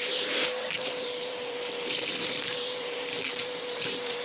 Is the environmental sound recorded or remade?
remade